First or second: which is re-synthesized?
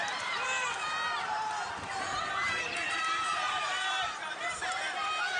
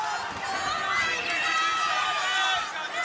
first